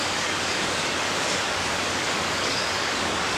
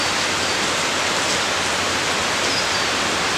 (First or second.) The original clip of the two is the second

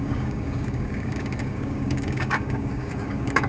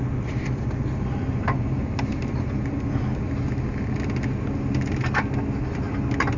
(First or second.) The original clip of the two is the second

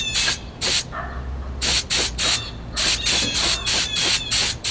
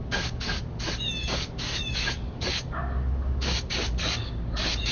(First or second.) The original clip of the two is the first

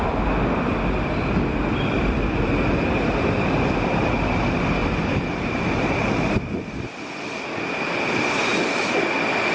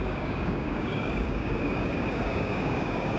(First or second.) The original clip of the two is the first